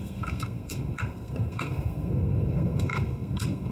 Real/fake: fake